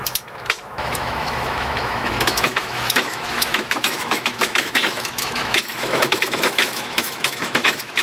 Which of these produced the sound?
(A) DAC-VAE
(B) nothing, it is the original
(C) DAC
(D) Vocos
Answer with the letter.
A